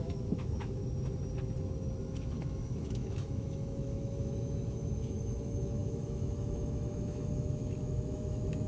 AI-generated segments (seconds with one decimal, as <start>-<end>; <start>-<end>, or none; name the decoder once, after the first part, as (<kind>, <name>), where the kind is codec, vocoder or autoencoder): 0.0-0.8 (autoencoder, DAC-VAE); 2.0-8.7